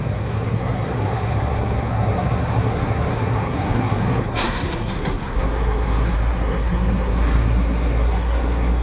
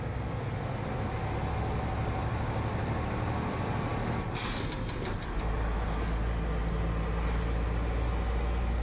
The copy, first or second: first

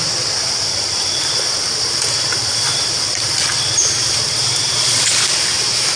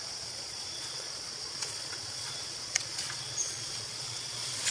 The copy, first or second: second